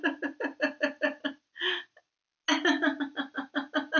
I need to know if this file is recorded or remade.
recorded